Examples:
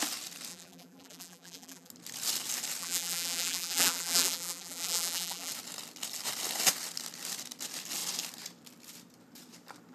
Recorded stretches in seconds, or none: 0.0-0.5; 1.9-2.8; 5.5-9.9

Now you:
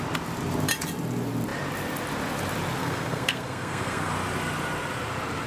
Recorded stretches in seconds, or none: 0.0-2.8; 4.1-5.5

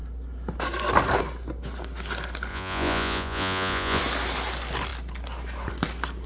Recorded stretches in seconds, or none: 0.0-2.5; 4.0-6.3

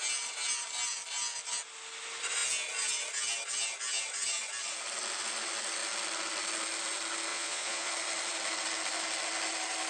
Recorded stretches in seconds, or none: 0.0-7.3; 7.9-9.9

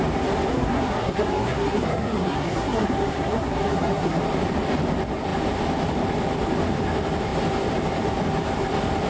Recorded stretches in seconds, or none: 0.0-0.5; 4.2-9.1